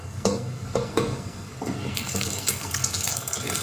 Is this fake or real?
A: fake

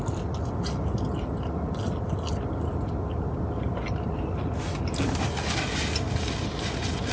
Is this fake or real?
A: real